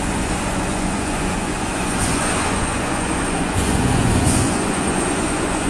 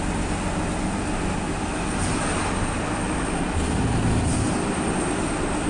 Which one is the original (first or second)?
second